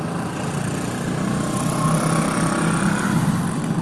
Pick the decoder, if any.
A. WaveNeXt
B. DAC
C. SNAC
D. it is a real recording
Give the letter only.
D